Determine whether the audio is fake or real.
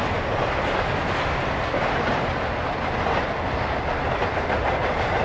real